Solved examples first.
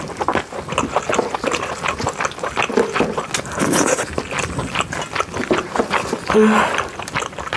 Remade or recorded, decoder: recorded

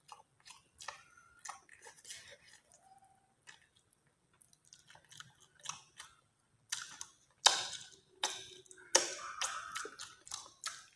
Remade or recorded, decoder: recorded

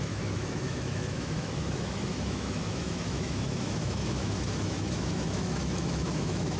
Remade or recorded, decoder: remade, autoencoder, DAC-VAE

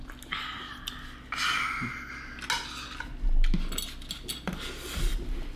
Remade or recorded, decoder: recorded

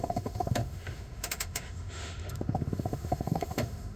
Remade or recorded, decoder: remade, autoencoder, DAC-VAE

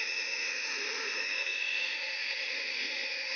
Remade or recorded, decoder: remade, autoencoder, DAC-VAE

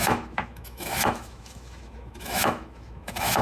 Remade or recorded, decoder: remade, autoencoder, DAC-VAE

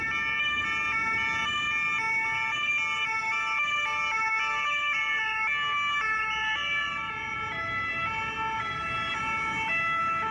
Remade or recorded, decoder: recorded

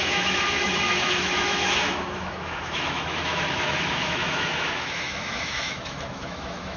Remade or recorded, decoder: remade, autoencoder, DAC-VAE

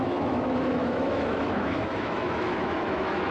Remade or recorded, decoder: remade, autoencoder, DAC-VAE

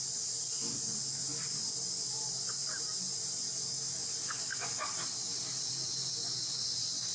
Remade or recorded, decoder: recorded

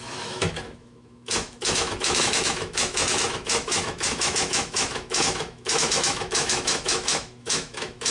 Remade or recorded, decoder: remade, autoencoder, DAC-VAE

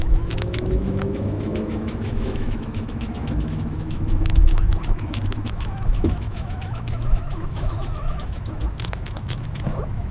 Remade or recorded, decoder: remade, autoencoder, DAC-VAE